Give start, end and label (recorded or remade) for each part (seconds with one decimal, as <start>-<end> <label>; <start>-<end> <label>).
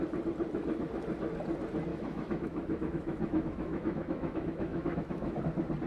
0.0-1.9 recorded; 1.9-5.4 remade; 5.4-5.9 recorded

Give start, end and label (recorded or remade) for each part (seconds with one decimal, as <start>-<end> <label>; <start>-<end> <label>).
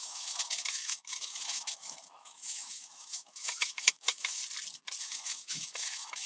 0.0-4.4 remade; 4.4-5.0 recorded; 5.0-6.3 remade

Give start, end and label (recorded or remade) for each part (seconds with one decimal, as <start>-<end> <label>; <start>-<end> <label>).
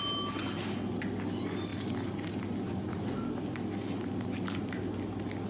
0.0-5.5 recorded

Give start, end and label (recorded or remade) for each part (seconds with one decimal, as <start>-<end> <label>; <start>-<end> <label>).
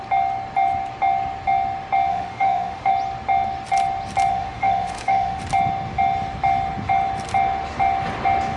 0.0-2.1 recorded; 2.1-2.9 remade; 2.9-4.3 recorded; 4.3-5.4 remade; 5.4-8.6 recorded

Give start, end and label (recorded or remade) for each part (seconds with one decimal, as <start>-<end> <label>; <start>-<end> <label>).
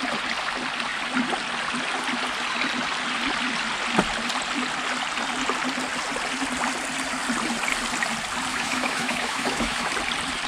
0.0-8.5 recorded; 8.5-9.9 remade; 9.9-10.5 recorded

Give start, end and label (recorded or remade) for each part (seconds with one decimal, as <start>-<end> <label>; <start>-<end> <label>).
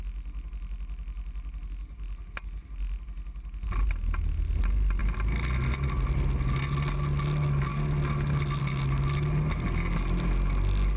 0.0-11.0 recorded